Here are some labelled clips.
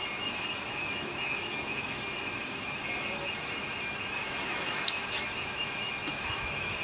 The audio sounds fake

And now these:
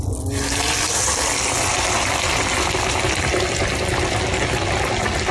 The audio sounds real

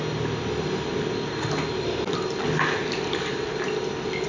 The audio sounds real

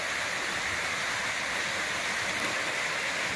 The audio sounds real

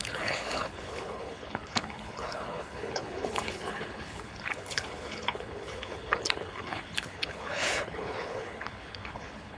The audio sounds fake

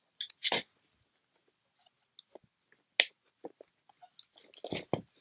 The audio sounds real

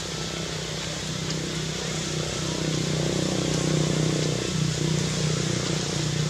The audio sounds real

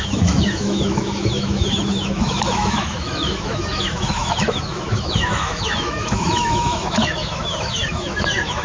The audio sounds fake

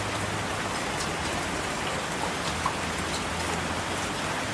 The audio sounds real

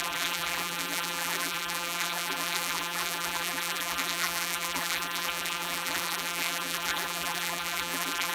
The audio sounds fake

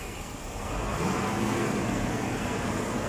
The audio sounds fake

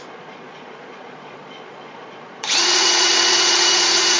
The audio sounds fake